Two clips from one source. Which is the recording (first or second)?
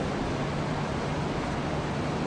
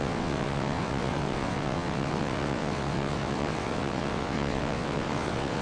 first